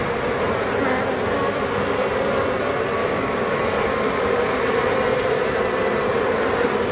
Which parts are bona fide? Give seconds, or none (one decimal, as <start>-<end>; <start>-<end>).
0.0-3.0; 3.6-6.9